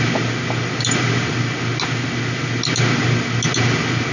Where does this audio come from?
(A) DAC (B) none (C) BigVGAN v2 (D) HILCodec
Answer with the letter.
B